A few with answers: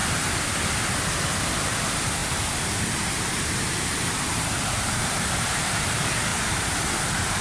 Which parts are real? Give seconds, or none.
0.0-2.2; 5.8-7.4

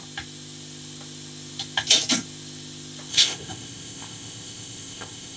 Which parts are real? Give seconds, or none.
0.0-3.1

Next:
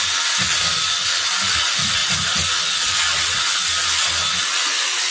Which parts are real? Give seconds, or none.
0.0-5.1

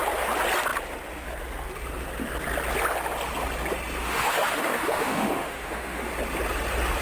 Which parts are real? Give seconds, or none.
0.0-4.0; 6.1-7.0